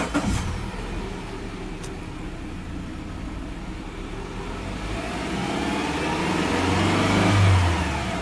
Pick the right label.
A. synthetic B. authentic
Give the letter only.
B